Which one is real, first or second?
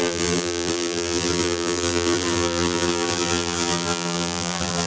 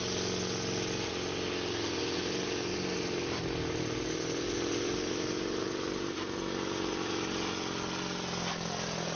second